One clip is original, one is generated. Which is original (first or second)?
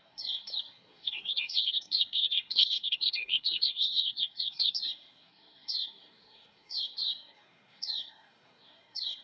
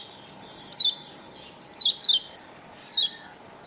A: second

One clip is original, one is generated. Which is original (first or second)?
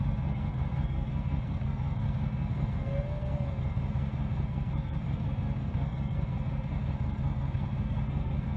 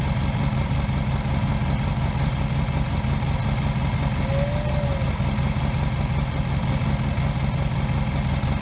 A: second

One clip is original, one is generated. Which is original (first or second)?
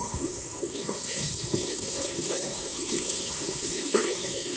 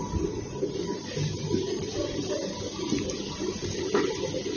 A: second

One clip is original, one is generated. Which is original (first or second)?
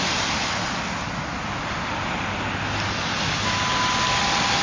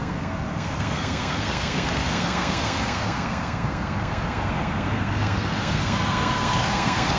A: first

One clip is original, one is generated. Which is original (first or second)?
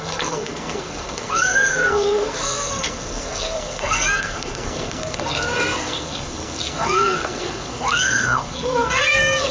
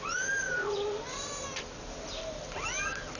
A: second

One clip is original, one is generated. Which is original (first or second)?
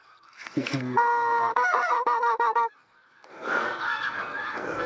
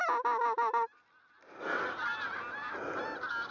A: second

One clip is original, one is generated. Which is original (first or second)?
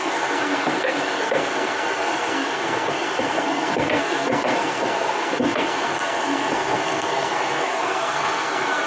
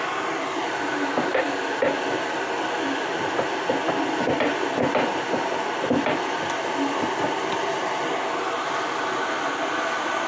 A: second